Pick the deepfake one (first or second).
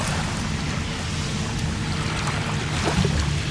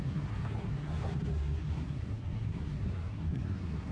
second